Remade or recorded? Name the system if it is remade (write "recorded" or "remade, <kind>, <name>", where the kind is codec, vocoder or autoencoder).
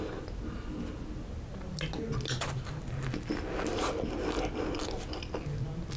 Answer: recorded